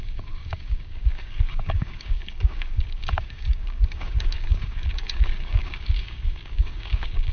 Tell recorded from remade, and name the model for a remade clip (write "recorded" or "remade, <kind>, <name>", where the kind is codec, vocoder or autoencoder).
remade, codec, DAC